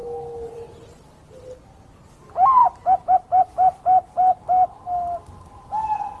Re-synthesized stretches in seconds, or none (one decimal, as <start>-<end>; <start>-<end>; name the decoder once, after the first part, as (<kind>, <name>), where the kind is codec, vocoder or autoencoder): none

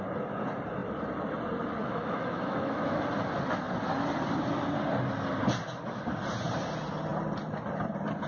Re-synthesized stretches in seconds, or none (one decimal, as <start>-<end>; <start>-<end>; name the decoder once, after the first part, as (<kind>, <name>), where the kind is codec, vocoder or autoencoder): 1.8-3.0 (autoencoder, DAC-VAE)

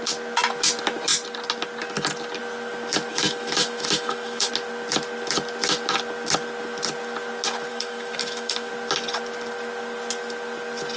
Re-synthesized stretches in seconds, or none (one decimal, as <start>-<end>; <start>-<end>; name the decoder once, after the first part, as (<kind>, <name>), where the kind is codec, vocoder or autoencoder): 3.1-4.5 (autoencoder, DAC-VAE); 7.7-8.7